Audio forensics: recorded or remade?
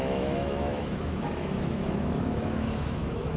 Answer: remade